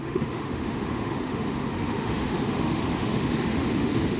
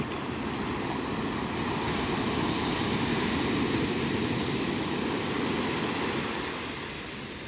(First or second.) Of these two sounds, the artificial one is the first